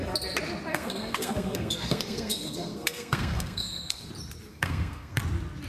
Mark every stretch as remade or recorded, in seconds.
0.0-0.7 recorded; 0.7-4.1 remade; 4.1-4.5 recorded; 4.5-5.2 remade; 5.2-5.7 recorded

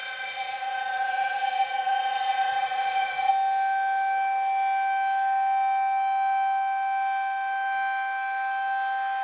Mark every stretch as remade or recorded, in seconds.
0.0-3.3 remade; 3.3-9.2 recorded

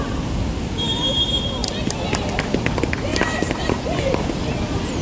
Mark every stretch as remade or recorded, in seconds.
0.0-3.1 recorded; 3.1-3.8 remade; 3.8-5.0 recorded

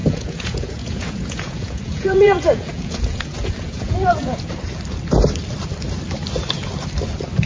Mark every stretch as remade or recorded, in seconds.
0.0-4.5 remade; 4.5-7.5 recorded

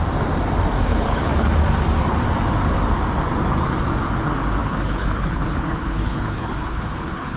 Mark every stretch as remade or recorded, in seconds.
0.0-0.9 recorded; 0.9-1.5 remade; 1.5-4.6 recorded; 4.6-7.4 remade